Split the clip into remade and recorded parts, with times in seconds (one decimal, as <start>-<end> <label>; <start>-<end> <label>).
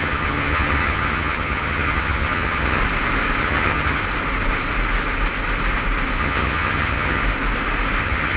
0.0-2.8 remade; 2.8-3.4 recorded; 3.4-4.0 remade; 4.0-6.2 recorded; 6.2-7.2 remade; 7.2-8.0 recorded; 8.0-8.4 remade